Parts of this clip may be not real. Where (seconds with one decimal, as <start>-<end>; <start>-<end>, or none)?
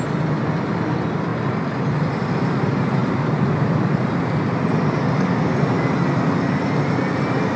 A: none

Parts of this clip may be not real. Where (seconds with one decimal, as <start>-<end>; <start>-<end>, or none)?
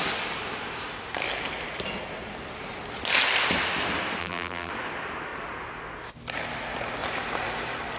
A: 4.2-4.7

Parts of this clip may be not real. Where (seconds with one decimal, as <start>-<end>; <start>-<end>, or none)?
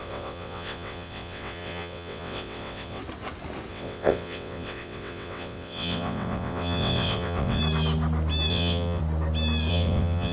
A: 0.0-3.0; 3.7-7.6; 8.5-9.0; 9.7-10.3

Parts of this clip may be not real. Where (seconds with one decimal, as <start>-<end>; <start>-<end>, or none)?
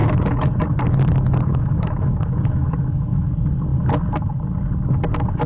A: 0.0-0.6; 1.5-3.3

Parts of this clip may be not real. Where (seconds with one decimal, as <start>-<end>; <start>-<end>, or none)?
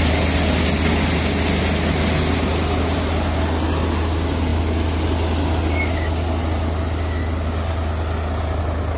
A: none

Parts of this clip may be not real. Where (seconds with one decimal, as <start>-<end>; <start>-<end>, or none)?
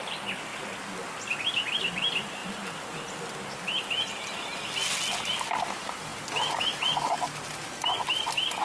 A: none